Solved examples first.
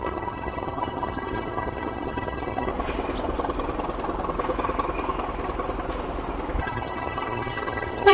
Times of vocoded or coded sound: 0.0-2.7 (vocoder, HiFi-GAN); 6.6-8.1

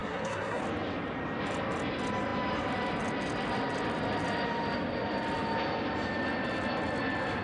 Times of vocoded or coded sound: 0.0-0.6 (codec, SNAC)

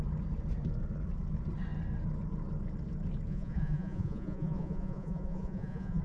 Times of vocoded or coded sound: 3.3-6.0 (vocoder, Vocos)

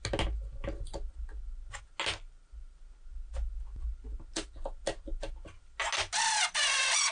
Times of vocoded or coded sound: none

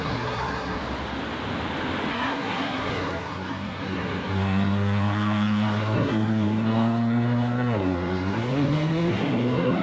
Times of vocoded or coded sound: 0.0-0.8 (codec, SNAC); 2.1-9.8